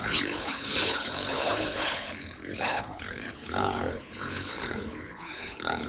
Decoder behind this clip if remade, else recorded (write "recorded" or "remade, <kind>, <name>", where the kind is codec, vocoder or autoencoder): remade, codec, HILCodec